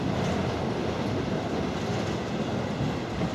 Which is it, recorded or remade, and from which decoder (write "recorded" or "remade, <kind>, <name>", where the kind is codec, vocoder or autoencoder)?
recorded